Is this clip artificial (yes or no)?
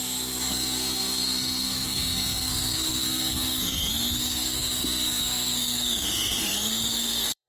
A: yes